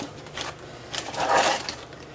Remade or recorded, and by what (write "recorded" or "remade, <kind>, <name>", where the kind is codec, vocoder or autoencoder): remade, vocoder, BigVGAN v2